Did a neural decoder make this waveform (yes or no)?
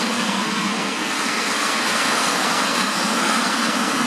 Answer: yes